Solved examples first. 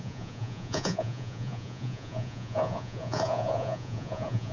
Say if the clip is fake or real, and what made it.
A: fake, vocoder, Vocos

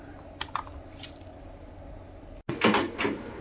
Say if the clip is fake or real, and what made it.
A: real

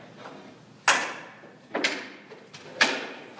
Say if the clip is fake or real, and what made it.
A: real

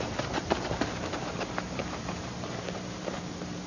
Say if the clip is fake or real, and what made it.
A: fake, vocoder, BigVGAN v2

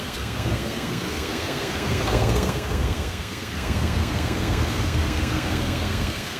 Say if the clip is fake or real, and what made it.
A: fake, codec, SNAC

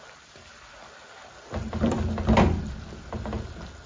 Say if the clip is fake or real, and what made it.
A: real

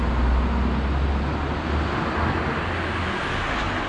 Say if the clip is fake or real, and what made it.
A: real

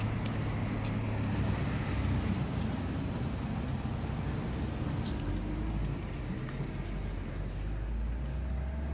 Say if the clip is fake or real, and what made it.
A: real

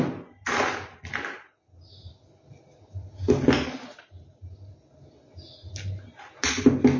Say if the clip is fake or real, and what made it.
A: real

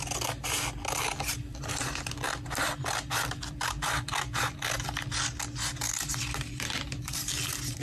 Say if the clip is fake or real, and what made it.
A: real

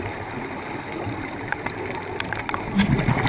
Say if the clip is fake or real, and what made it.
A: real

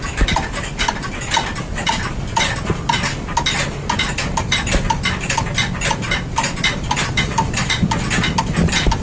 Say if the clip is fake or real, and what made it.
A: real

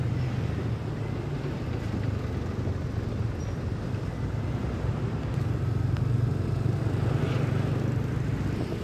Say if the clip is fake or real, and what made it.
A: real